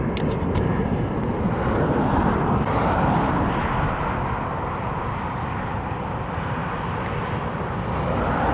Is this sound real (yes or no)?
yes